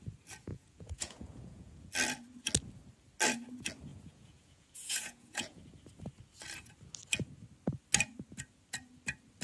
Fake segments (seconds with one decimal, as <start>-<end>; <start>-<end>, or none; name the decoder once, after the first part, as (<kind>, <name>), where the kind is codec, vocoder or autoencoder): 0.5-1.9 (vocoder, Vocos); 3.9-5.6